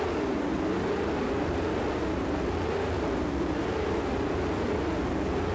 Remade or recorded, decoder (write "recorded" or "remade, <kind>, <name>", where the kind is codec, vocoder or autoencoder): recorded